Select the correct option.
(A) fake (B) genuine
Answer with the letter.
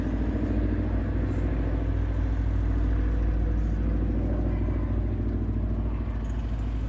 B